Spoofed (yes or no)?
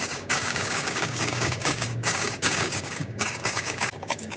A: yes